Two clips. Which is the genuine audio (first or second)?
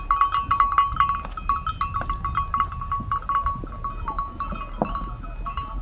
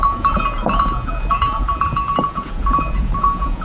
first